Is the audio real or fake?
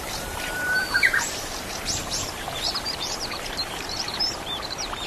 fake